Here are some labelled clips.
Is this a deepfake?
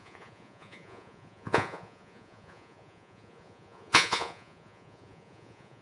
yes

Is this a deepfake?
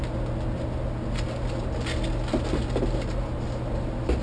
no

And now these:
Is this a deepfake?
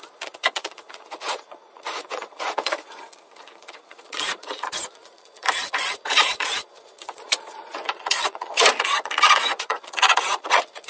yes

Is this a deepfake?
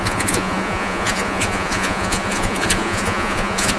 yes